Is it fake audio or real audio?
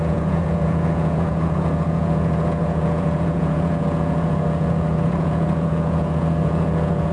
fake